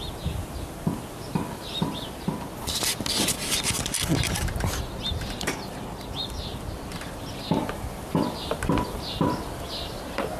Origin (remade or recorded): recorded